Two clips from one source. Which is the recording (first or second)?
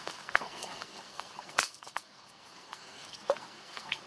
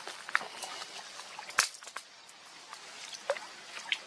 second